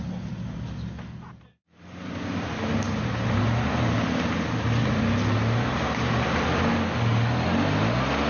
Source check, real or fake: real